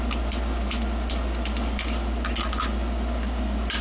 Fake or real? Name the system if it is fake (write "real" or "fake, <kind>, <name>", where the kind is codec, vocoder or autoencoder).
real